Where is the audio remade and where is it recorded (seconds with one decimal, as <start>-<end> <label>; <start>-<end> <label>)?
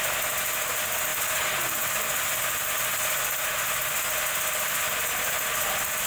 0.0-6.1 recorded